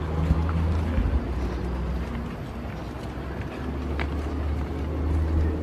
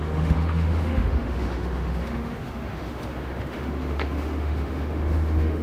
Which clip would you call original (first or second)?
first